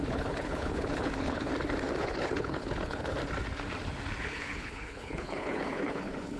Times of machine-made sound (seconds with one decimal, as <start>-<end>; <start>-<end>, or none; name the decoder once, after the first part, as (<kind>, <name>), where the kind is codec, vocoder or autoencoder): 0.0-1.5 (codec, HILCodec); 2.0-3.2; 4.2-6.4